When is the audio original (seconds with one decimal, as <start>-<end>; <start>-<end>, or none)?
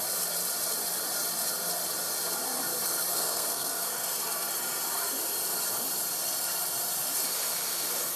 0.0-3.1; 4.2-8.2